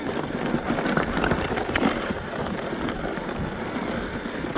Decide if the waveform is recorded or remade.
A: recorded